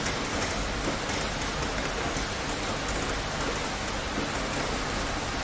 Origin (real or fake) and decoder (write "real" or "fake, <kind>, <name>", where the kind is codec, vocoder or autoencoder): real